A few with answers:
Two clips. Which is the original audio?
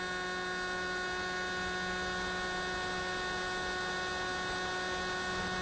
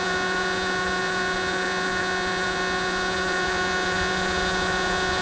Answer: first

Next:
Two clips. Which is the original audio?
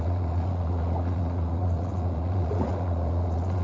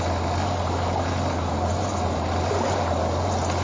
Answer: second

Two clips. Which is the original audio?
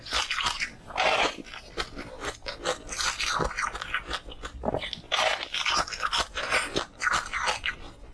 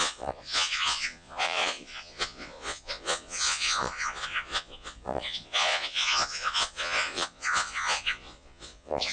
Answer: first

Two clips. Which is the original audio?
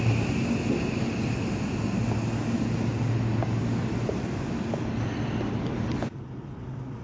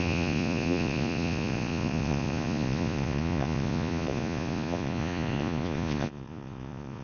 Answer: first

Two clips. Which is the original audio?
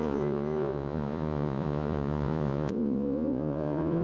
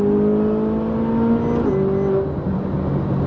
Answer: second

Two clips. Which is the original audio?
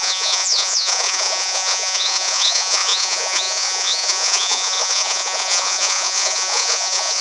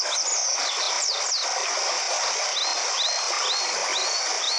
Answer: second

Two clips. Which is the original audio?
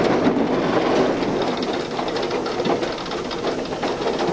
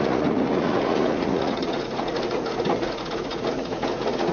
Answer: first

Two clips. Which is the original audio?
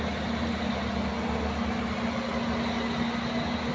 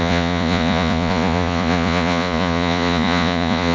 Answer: first